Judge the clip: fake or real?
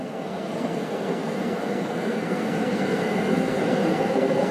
fake